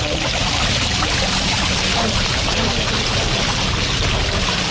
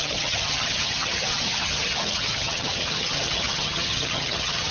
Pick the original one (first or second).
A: first